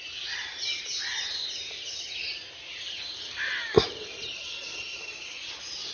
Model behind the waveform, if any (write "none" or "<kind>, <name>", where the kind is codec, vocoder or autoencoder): none